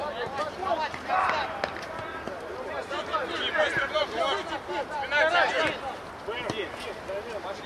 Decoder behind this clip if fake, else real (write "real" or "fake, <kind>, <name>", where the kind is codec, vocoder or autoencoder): real